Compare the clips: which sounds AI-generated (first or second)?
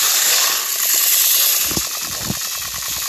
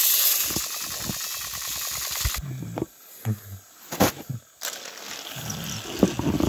first